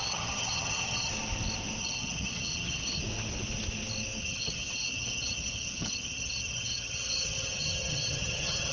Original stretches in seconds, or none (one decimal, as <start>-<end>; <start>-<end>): 1.1-1.8; 3.0-4.2